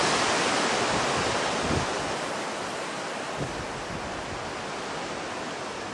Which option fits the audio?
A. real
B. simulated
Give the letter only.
A